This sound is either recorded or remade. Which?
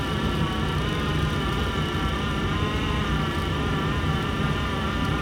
recorded